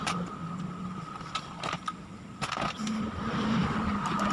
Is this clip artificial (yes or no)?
no